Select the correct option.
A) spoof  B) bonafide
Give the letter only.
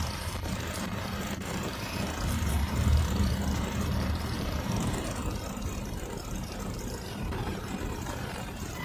A